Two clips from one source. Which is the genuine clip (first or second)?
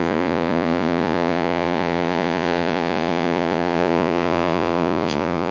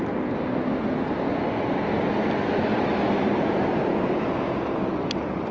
second